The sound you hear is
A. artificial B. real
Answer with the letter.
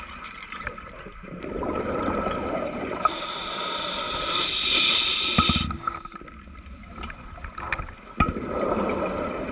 B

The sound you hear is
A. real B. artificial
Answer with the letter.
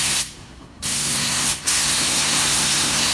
B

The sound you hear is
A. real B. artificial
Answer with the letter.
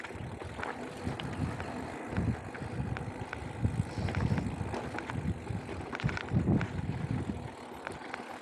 A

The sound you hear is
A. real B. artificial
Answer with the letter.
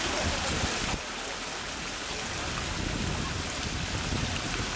A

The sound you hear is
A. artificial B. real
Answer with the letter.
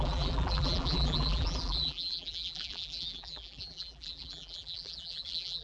A